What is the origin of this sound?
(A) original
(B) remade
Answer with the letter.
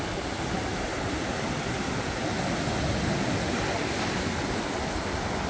A